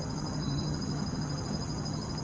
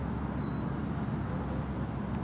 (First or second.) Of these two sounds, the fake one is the first